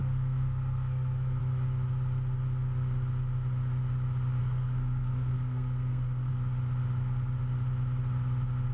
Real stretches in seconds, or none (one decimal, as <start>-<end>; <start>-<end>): 1.4-4.4; 6.3-8.7